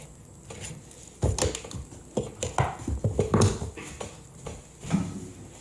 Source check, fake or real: real